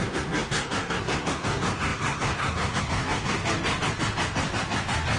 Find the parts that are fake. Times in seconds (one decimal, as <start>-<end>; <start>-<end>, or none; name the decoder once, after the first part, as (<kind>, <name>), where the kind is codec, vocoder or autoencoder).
0.0-3.4 (codec, SNAC)